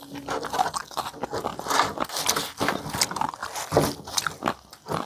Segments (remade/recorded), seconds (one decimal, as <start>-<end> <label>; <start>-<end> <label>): 0.0-1.5 recorded; 1.5-2.2 remade; 2.2-5.1 recorded